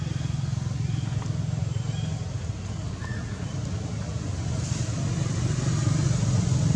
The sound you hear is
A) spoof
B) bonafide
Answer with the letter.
B